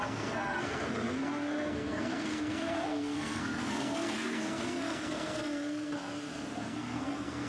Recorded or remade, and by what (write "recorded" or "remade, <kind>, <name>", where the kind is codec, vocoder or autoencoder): remade, codec, SNAC